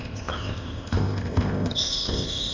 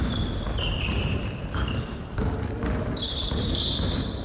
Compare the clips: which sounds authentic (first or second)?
second